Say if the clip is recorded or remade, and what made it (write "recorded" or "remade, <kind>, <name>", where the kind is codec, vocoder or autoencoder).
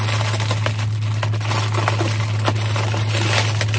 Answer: recorded